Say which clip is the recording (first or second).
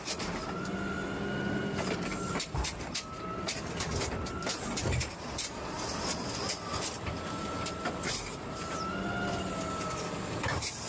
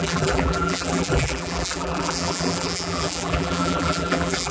first